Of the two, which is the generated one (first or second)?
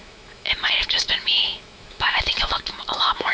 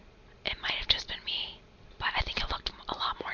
first